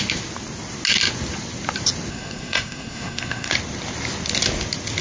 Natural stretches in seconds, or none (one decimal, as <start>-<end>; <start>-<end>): 0.0-2.1; 3.5-5.0

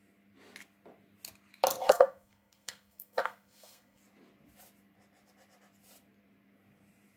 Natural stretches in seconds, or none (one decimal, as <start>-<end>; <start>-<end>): 0.0-1.8; 4.0-7.2

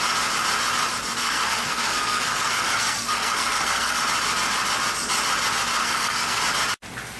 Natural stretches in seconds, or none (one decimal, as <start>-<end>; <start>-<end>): 0.0-1.2; 4.0-5.8; 6.4-7.2

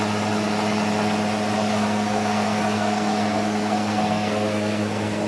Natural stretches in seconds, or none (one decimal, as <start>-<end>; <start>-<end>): 0.0-1.7

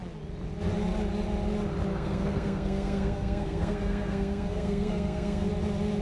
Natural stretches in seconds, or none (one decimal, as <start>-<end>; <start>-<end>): 0.0-1.9; 5.5-6.0

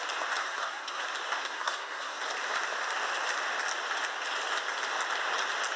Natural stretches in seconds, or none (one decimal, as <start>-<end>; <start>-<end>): 0.0-0.4; 1.0-1.4; 2.2-5.8